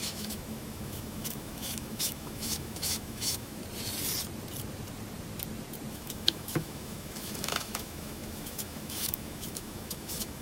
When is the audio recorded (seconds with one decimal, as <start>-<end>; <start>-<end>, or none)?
3.6-5.9